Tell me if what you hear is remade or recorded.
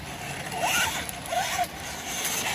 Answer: recorded